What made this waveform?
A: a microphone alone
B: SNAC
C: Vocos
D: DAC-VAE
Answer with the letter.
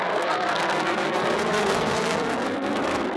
B